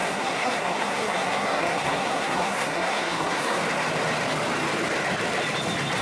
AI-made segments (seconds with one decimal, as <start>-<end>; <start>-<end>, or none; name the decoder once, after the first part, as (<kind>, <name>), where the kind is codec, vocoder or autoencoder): 0.0-3.6 (codec, SNAC)